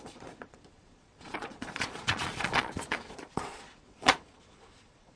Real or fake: fake